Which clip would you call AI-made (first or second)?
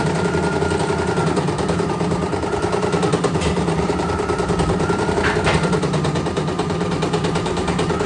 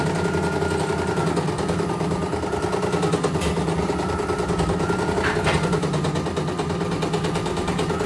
first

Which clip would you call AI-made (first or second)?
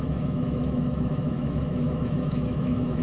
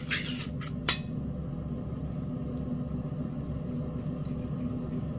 first